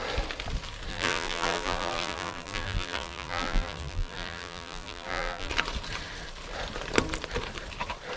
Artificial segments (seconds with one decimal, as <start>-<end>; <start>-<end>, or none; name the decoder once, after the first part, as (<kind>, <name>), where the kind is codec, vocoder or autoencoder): 0.9-5.5 (vocoder, BigVGAN v2)